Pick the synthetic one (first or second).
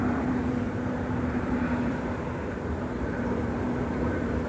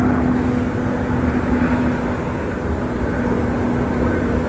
first